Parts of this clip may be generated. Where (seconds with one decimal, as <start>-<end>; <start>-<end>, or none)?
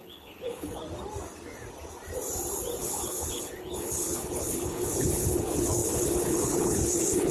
0.0-0.8; 2.8-7.3